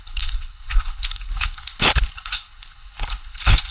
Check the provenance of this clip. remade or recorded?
remade